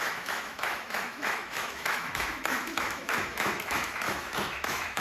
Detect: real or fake fake